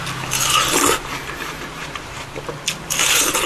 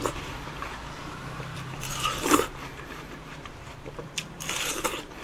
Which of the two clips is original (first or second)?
first